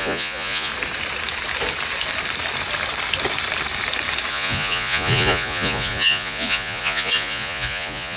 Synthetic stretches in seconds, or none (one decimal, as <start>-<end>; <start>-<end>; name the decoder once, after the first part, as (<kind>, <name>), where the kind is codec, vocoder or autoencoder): 0.0-0.7 (vocoder, Vocos); 4.3-8.2